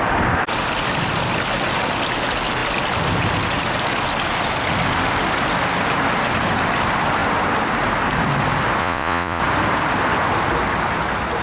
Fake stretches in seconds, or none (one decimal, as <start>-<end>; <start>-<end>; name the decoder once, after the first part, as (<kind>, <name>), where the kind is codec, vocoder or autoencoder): 8.8-9.4 (vocoder, Vocos)